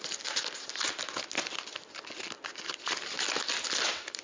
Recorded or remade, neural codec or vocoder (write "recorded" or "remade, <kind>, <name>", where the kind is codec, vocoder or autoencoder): recorded